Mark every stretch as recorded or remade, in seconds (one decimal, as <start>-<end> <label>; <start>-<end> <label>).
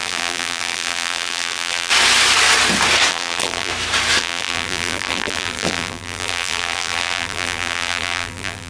0.0-1.9 remade; 1.9-3.1 recorded; 3.1-3.7 remade; 3.7-4.2 recorded; 4.2-8.7 remade